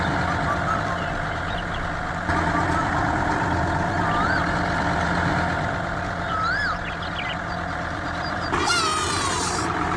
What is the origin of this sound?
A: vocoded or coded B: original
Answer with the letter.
B